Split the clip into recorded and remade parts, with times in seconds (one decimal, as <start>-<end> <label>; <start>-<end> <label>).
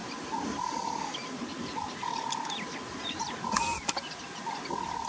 0.0-5.1 recorded